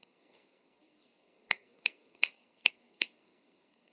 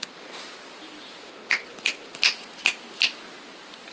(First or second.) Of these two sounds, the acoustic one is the second